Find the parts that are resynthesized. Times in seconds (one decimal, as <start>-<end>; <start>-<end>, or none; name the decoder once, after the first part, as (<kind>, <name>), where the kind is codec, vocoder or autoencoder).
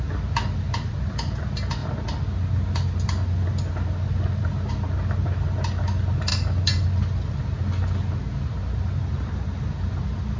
none